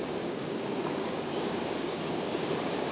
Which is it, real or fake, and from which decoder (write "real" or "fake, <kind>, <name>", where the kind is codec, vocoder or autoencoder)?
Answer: fake, codec, DAC